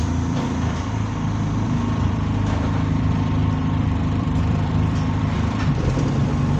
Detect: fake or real fake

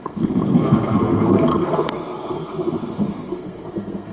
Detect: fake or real fake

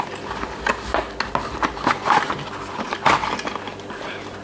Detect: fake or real real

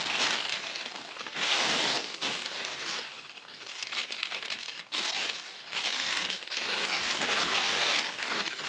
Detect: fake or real fake